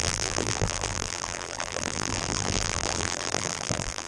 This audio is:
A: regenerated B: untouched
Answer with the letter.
A